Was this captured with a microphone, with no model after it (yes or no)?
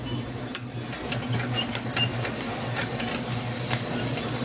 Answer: yes